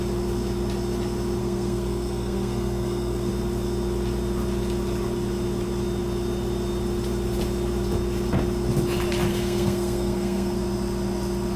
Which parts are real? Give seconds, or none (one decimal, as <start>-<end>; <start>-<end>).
0.0-1.4; 3.3-9.3; 10.6-11.6